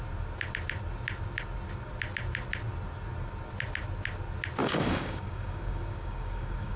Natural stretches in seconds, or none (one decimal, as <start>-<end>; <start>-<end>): 0.0-4.6